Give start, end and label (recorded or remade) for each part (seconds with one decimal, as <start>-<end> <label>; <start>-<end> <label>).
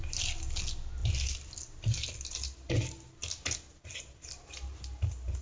0.0-1.0 recorded; 1.0-2.1 remade; 2.1-5.4 recorded